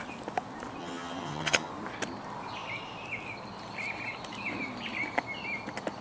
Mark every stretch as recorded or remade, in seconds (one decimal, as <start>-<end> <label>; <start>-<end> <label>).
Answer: 0.0-0.8 recorded; 0.8-1.7 remade; 1.7-6.0 recorded